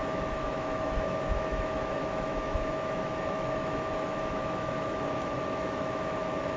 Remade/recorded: remade